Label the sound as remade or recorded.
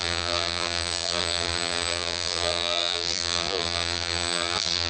remade